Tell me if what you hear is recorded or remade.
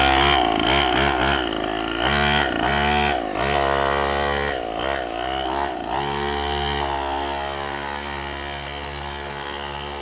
recorded